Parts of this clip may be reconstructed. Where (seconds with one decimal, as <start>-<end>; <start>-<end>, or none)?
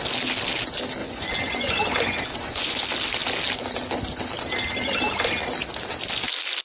1.0-2.8